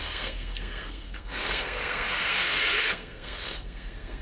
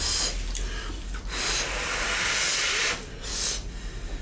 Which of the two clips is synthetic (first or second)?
first